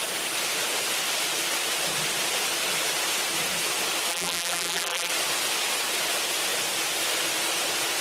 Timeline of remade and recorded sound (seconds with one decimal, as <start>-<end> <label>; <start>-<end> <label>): 0.0-4.1 recorded; 4.1-5.1 remade; 5.1-8.0 recorded